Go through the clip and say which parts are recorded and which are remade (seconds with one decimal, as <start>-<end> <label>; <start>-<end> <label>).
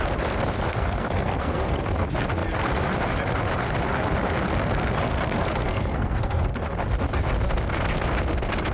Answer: 0.0-0.7 recorded; 0.7-1.8 remade; 1.8-5.7 recorded; 5.7-6.4 remade; 6.4-8.7 recorded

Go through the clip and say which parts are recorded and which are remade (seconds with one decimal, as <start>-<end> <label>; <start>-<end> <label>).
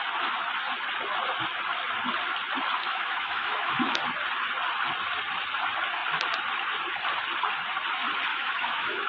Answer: 0.0-2.8 recorded; 2.8-4.0 remade; 4.0-8.3 recorded; 8.3-9.1 remade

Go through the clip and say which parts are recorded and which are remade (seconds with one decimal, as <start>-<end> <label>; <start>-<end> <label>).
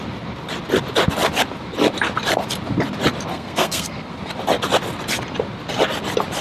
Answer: 0.0-3.3 recorded; 3.3-4.1 remade; 4.1-6.4 recorded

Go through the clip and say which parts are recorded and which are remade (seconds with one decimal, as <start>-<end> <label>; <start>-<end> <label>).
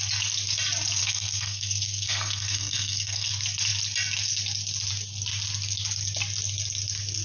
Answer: 0.0-1.0 recorded; 1.0-3.3 remade; 3.3-7.2 recorded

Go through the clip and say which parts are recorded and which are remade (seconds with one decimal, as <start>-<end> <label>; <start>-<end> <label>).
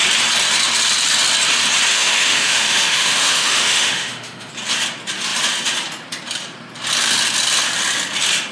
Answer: 0.0-1.9 recorded; 1.9-4.5 remade; 4.5-8.5 recorded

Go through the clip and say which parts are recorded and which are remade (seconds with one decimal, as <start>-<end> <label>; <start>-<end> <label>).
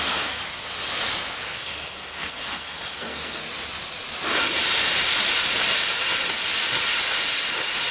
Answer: 0.0-0.4 remade; 0.4-1.4 recorded; 1.4-3.4 remade; 3.4-7.9 recorded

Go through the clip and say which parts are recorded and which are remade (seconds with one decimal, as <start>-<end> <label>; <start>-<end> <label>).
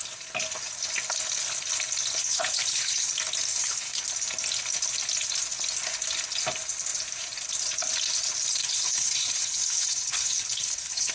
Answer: 0.0-2.2 recorded; 2.2-3.1 remade; 3.1-3.5 recorded; 3.5-4.0 remade; 4.0-8.6 recorded; 8.6-11.1 remade